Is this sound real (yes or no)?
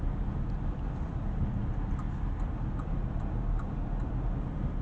yes